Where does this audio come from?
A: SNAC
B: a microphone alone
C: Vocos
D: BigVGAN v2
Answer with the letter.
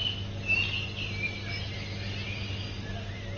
B